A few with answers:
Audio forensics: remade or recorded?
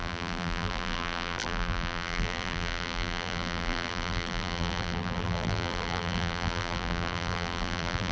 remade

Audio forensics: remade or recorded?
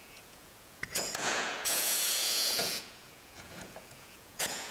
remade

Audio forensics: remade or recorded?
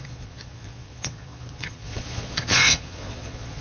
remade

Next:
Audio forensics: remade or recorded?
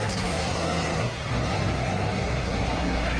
remade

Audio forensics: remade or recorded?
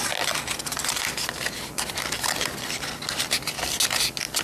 recorded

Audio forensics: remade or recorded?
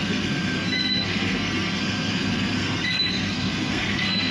remade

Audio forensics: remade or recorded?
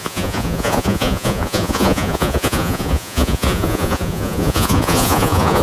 remade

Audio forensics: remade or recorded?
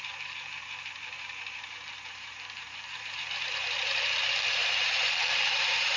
remade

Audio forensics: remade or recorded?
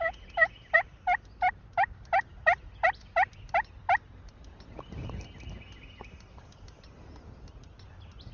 recorded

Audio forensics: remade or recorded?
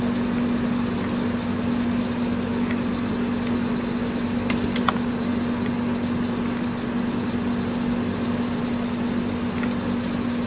recorded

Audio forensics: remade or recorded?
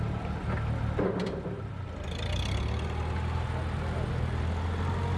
recorded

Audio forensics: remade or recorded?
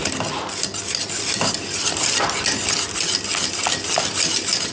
recorded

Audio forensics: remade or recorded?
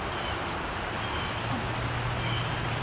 recorded